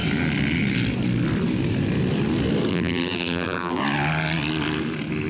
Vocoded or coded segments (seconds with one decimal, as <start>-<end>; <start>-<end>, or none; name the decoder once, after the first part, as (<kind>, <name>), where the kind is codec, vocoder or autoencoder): 2.7-3.8 (vocoder, BigVGAN v2)